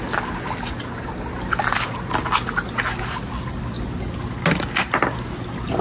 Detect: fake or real real